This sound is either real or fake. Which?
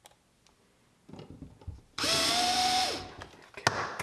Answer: real